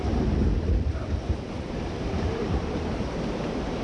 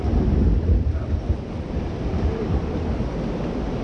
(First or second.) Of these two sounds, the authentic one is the second